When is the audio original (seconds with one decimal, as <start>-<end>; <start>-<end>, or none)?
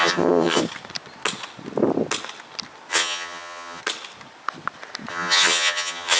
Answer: 0.6-2.9; 3.8-5.1